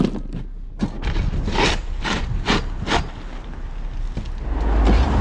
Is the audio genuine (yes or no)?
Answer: yes